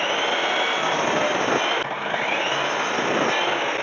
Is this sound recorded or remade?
recorded